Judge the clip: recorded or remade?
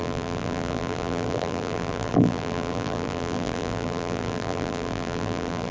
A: remade